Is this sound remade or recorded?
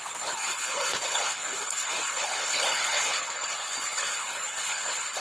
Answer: remade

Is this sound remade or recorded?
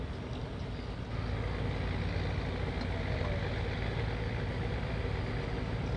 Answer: recorded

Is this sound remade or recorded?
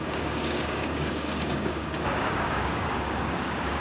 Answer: remade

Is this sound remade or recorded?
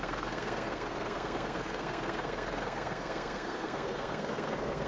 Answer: remade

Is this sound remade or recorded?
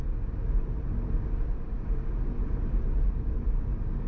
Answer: recorded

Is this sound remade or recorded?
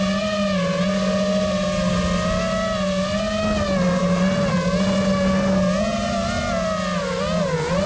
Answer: recorded